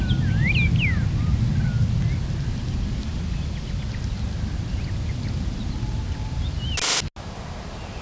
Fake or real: real